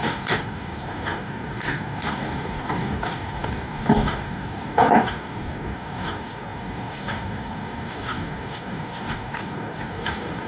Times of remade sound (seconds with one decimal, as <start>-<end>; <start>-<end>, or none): 0.0-10.5